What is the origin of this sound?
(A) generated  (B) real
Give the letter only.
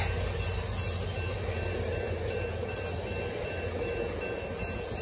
B